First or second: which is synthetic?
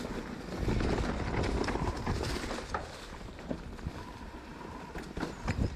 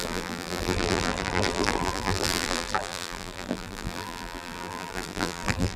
second